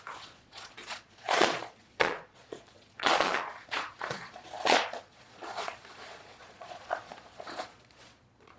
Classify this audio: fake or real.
fake